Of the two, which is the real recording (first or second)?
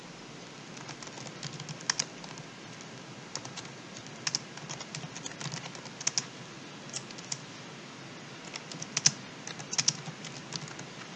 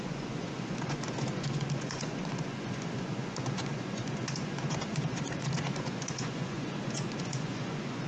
first